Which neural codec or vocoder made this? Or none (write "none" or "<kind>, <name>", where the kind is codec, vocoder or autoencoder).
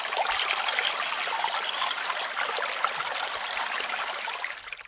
none